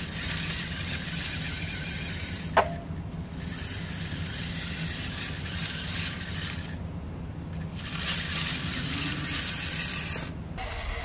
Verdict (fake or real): real